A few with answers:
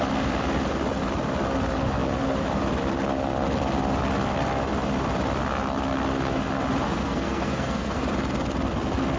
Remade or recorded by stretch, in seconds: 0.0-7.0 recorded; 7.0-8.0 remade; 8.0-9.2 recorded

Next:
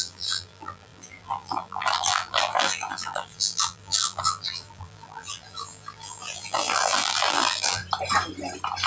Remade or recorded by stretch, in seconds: 0.0-7.8 remade; 7.8-8.9 recorded

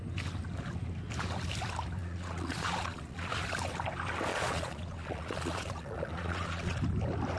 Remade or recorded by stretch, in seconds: 0.0-2.0 recorded; 2.0-3.5 remade; 3.5-4.3 recorded; 4.3-6.8 remade; 6.8-7.4 recorded

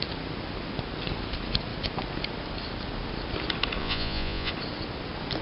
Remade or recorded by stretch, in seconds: 0.0-3.8 recorded; 3.8-4.5 remade; 4.5-5.4 recorded

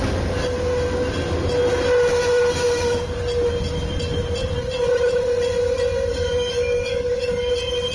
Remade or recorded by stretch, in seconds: 0.0-6.1 recorded; 6.1-7.5 remade; 7.5-7.9 recorded

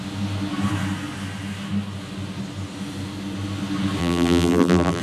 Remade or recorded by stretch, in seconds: 0.0-4.0 recorded; 4.0-5.0 remade